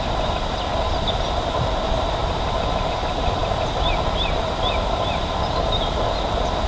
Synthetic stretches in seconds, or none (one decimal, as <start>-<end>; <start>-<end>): none